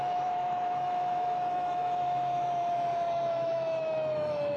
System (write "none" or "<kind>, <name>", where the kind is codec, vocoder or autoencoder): autoencoder, DAC-VAE